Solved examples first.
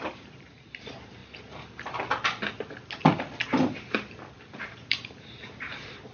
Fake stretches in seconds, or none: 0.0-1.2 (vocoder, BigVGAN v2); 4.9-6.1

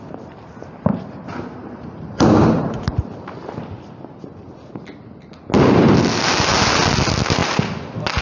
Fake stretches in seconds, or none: 1.6-3.6 (vocoder, BigVGAN v2)

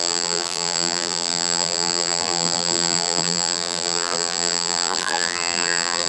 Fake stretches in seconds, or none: 0.0-6.1 (vocoder, BigVGAN v2)

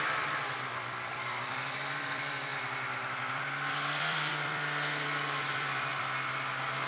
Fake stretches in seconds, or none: 0.0-6.9 (vocoder, BigVGAN v2)

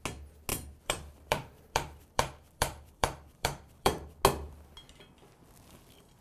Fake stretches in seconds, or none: 0.5-4.2 (vocoder, BigVGAN v2)

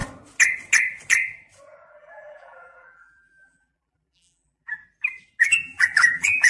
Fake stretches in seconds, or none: 1.9-4.8 (vocoder, BigVGAN v2); 5.4-6.5